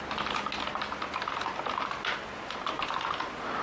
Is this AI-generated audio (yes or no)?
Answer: no